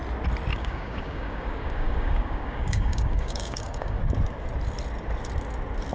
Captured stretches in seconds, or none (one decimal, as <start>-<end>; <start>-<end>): 0.0-0.5; 4.0-5.9